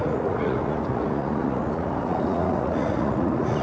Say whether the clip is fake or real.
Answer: fake